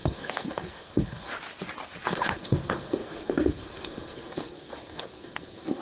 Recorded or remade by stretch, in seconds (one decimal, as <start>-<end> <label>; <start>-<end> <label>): 0.0-1.3 remade; 1.3-2.1 recorded; 2.1-5.8 remade